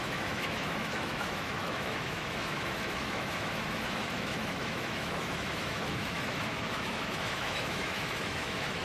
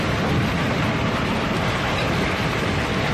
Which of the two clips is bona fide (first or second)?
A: second